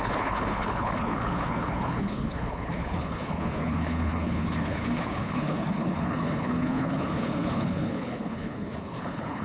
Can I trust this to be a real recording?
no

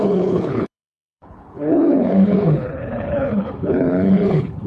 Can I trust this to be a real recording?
no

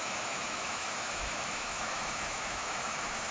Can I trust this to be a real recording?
no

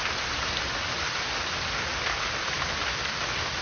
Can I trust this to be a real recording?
yes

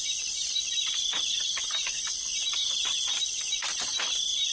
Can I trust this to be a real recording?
yes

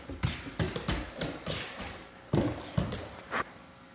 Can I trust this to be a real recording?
yes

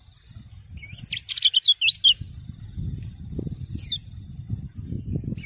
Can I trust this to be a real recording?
yes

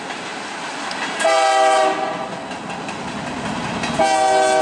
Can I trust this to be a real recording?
yes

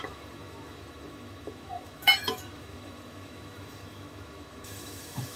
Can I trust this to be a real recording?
no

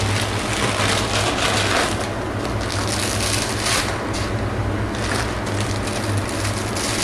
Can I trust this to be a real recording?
yes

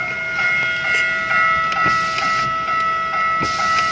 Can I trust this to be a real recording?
yes